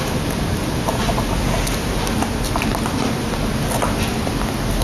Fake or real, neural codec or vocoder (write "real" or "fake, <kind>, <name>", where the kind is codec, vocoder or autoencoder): real